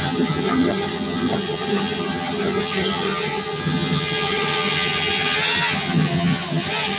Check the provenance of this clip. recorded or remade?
remade